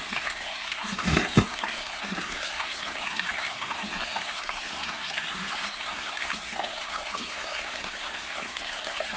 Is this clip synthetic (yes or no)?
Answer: yes